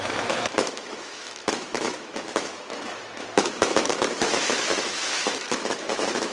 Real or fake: fake